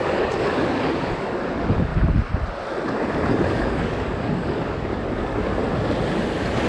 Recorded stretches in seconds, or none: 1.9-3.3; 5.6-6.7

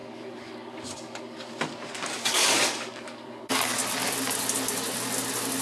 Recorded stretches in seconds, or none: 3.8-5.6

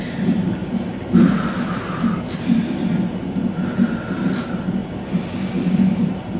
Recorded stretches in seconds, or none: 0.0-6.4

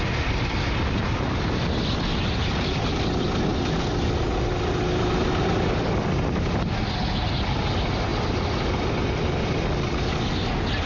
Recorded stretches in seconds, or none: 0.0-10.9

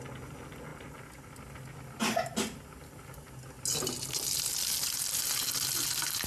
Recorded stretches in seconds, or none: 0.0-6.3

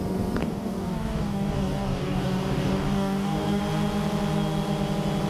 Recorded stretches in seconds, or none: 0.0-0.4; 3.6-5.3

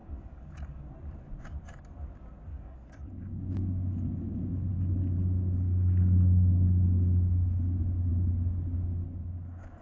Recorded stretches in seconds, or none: 0.8-2.5; 3.1-9.8

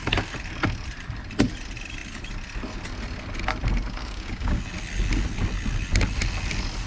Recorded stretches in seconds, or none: 0.0-4.0; 4.6-6.9